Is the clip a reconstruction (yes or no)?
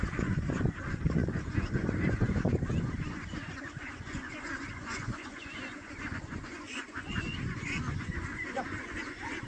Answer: yes